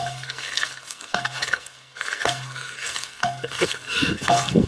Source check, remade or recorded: remade